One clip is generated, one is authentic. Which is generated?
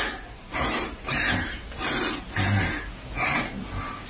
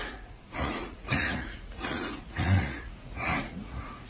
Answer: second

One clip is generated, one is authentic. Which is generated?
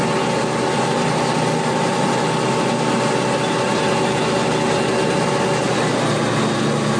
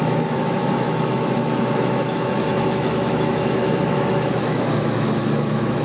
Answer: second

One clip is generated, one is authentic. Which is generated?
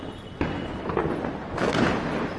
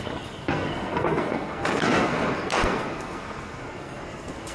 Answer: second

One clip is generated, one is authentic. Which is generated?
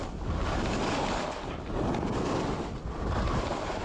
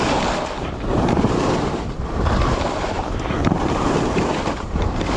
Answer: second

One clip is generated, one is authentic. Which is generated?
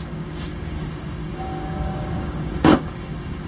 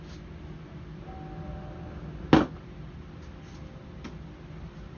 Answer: first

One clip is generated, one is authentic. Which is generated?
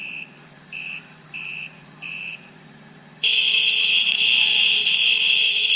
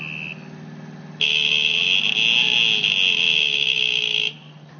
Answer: first